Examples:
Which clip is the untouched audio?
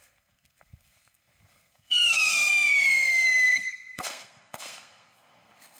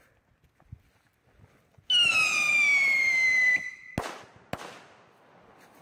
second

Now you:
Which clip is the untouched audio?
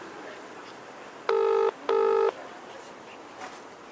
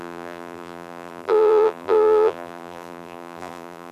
first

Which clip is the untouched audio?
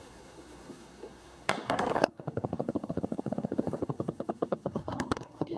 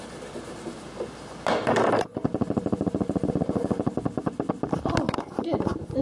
second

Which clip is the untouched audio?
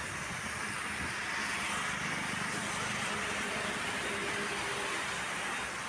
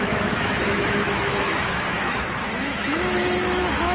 first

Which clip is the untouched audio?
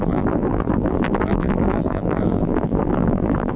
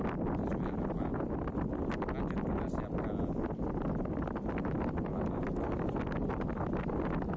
second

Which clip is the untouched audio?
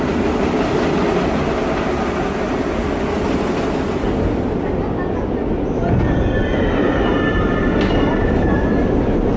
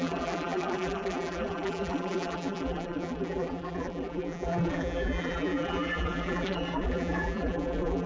first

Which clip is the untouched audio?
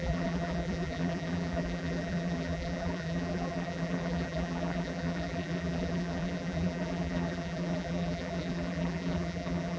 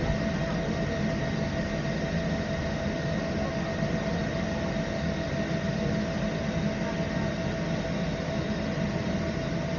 second